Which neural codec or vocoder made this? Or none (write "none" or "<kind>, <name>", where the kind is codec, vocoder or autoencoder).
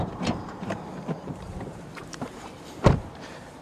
vocoder, BigVGAN v2